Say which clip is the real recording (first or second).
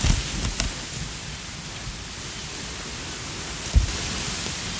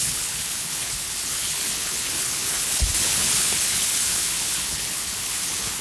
first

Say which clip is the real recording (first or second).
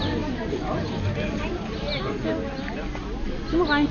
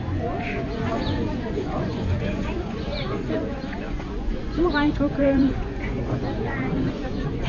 first